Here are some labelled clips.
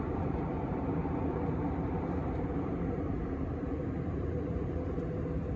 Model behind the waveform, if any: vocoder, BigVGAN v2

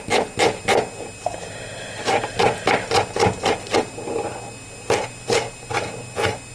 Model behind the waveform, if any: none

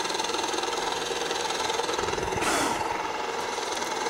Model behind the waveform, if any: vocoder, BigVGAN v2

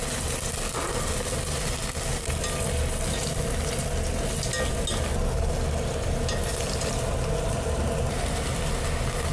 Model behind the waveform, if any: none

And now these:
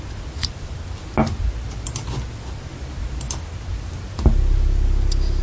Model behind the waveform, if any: none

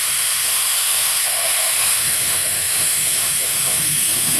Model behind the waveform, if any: autoencoder, DAC-VAE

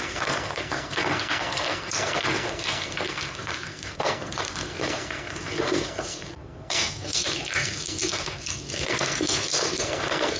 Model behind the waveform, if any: codec, SNAC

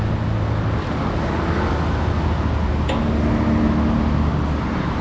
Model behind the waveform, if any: none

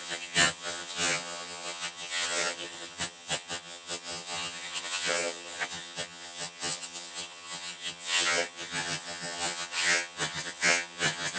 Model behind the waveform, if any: vocoder, HiFi-GAN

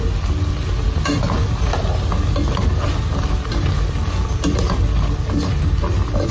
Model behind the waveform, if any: none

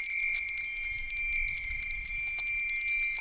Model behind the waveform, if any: none